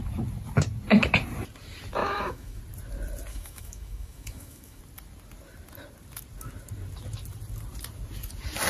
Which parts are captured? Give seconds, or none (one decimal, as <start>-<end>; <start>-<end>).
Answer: 0.0-2.0; 2.6-3.3; 4.8-8.7